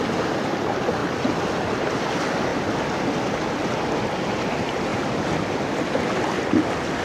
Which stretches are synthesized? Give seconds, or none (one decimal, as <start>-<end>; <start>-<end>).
1.0-2.0; 4.9-5.5